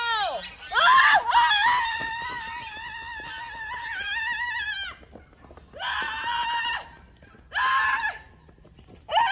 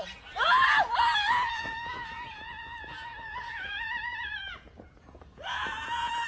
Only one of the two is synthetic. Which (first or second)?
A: second